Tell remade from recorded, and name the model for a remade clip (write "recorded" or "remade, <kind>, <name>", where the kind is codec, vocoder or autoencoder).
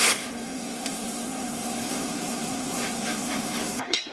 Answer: remade, codec, SNAC